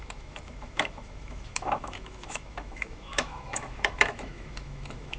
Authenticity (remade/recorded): remade